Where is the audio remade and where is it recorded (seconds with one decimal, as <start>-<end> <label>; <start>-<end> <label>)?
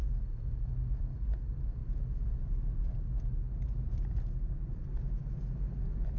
0.0-6.2 recorded